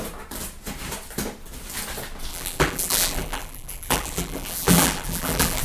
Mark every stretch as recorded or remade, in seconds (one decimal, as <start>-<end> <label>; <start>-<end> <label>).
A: 0.0-2.3 recorded; 2.3-5.6 remade